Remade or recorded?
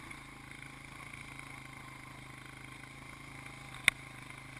recorded